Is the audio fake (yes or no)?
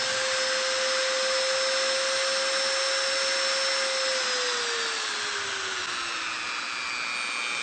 no